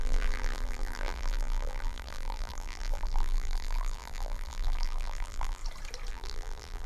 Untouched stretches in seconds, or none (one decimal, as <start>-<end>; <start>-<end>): 5.6-6.1